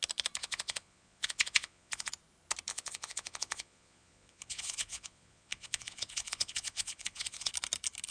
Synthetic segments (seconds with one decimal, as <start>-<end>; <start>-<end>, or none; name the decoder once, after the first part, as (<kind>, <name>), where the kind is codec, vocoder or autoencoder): 0.4-2.1 (vocoder, Vocos); 2.7-7.5